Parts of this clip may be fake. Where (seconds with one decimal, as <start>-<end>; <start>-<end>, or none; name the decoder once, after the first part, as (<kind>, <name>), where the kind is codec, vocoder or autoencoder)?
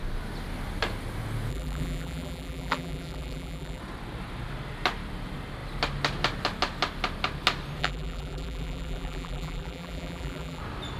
1.5-3.8 (vocoder, BigVGAN v2); 7.8-10.6